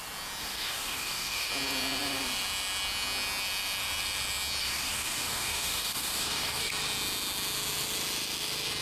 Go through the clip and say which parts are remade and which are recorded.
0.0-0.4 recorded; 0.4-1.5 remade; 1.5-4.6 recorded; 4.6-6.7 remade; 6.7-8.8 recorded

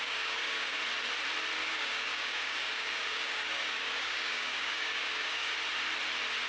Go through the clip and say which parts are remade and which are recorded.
0.0-0.8 remade; 0.8-1.6 recorded; 1.6-5.5 remade; 5.5-6.5 recorded

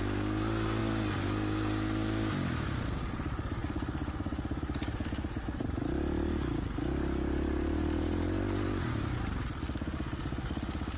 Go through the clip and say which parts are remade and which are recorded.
0.0-11.0 recorded

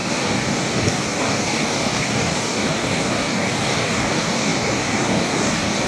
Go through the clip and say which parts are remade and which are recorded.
0.0-5.9 remade

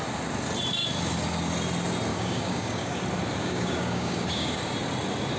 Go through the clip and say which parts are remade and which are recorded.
0.0-2.1 recorded; 2.1-3.0 remade; 3.0-3.4 recorded; 3.4-4.6 remade; 4.6-5.4 recorded

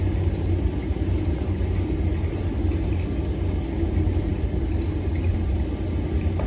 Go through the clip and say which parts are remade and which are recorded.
0.0-6.5 recorded